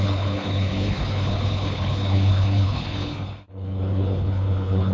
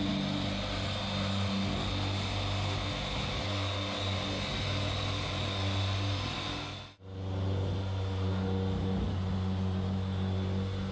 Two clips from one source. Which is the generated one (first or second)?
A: first